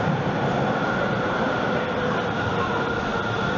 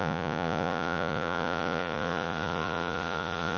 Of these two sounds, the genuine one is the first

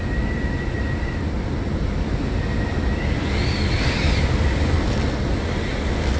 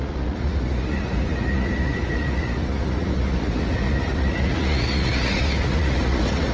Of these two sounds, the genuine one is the first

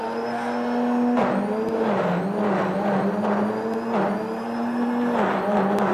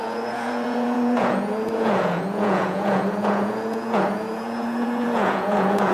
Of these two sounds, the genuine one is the first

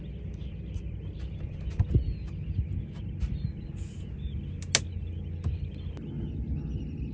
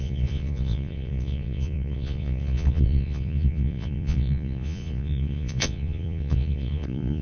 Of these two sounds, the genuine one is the first